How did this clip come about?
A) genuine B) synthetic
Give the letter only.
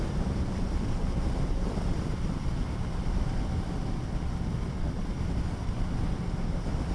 B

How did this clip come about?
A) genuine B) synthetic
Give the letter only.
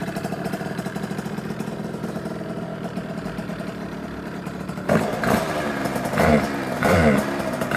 B